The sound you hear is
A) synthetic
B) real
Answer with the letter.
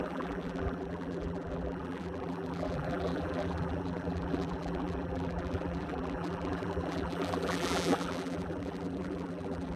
A